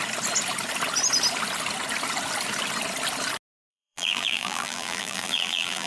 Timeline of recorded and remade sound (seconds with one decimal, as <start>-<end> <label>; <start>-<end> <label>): 0.0-3.7 recorded; 3.7-5.9 remade